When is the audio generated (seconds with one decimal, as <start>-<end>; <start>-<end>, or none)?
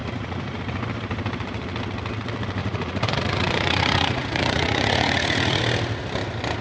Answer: 0.0-0.6; 2.6-5.6